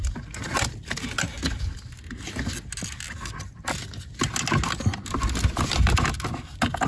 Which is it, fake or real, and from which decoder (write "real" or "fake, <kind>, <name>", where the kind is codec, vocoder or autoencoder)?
real